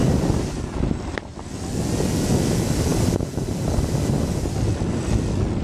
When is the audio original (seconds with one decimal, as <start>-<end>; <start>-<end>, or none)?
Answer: 0.0-5.6